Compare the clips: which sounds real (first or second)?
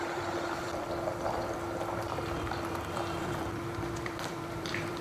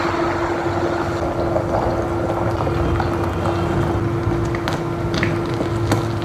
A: second